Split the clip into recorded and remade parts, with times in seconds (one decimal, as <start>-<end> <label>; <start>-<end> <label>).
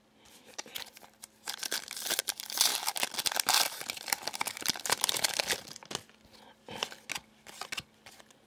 0.0-0.7 remade; 0.7-2.2 recorded; 2.2-2.7 remade; 2.7-4.5 recorded; 4.5-5.8 remade; 5.8-8.5 recorded